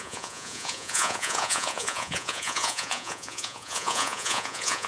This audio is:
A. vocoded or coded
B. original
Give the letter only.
A